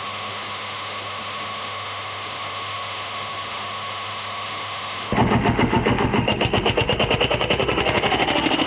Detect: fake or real fake